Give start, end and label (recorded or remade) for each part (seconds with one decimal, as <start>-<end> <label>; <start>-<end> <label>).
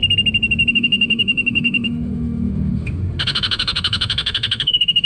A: 0.0-0.7 recorded; 0.7-5.1 remade